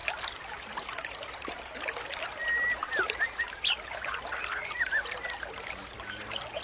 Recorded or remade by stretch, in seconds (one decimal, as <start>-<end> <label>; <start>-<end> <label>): 0.0-2.8 recorded; 2.8-3.6 remade; 3.6-6.6 recorded